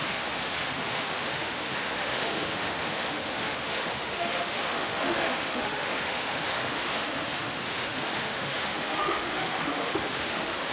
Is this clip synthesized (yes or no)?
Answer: yes